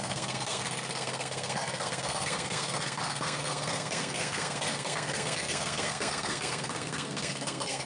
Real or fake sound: fake